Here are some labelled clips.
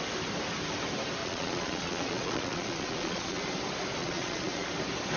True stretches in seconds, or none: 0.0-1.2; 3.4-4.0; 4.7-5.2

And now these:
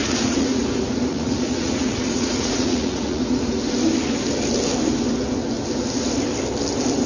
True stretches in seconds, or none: 0.6-1.1; 3.2-7.1

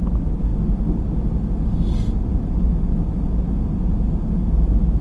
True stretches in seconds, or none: 0.0-5.0

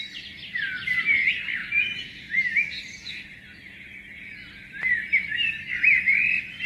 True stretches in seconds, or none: 0.0-1.6; 2.3-6.7

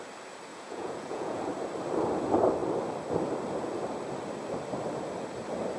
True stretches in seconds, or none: 0.0-0.5; 1.4-5.8

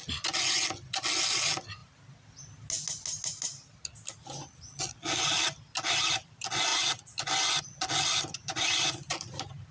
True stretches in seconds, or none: 0.0-9.7

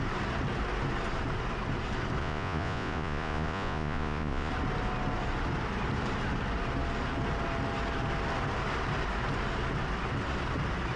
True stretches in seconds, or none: 0.0-2.2; 4.5-11.0

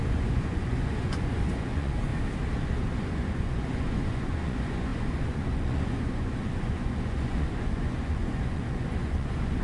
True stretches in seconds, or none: 2.1-3.0